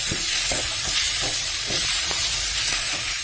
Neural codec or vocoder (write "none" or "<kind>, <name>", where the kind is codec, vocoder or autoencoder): vocoder, Vocos